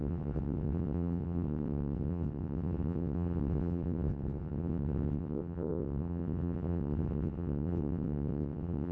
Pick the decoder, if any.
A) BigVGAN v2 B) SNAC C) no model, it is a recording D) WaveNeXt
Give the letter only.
D